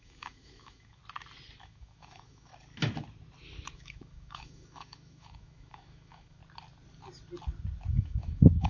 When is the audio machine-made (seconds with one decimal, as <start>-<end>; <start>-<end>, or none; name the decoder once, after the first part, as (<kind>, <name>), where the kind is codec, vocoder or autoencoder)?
0.0-1.0 (autoencoder, DAC-VAE); 1.6-2.5; 3.7-6.4; 7.9-8.7